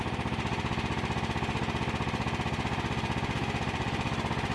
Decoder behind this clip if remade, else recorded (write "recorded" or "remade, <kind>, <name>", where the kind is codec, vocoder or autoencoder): recorded